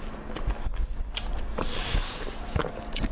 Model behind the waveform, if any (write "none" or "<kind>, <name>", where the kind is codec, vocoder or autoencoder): none